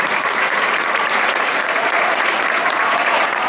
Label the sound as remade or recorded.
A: remade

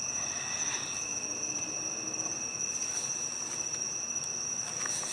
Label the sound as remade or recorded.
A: recorded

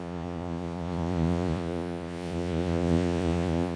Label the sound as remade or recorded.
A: remade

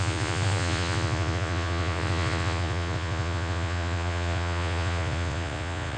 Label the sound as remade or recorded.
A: remade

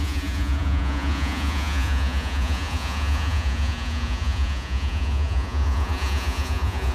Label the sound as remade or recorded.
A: remade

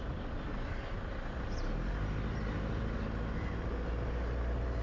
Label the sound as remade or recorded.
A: recorded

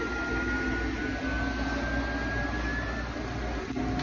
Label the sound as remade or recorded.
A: recorded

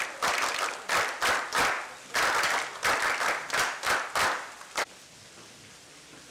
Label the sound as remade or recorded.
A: recorded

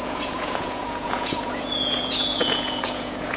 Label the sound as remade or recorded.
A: remade